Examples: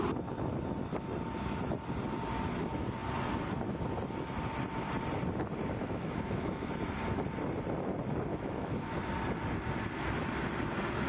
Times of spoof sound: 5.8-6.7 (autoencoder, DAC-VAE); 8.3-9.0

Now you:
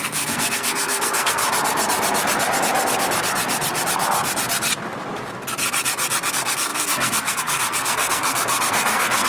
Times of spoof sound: 0.0-1.4 (codec, SNAC); 6.3-9.3

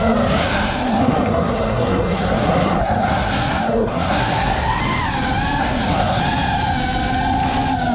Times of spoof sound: 0.4-4.8 (codec, SNAC); 5.6-6.2

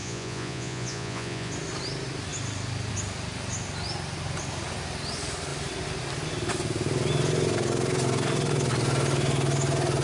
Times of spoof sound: 0.0-1.5 (vocoder, Vocos)

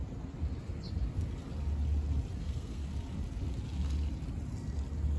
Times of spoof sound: 2.4-2.8 (codec, SNAC)

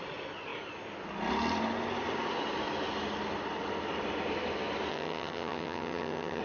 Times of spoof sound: 4.9-6.4 (vocoder, HiFi-GAN)